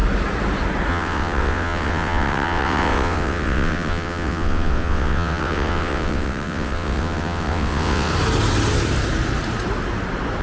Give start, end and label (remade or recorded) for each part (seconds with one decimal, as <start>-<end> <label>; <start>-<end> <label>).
0.0-0.9 recorded; 0.9-8.1 remade; 8.1-10.4 recorded